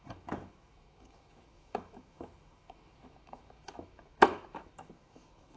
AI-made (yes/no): yes